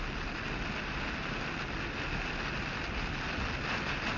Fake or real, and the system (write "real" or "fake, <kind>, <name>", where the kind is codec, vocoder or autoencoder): real